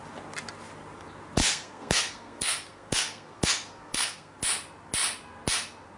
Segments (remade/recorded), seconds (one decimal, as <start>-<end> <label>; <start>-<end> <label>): 0.0-1.4 recorded; 1.4-4.4 remade; 4.4-6.0 recorded